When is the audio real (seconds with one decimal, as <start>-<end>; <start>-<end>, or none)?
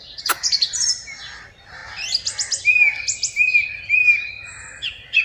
1.8-3.8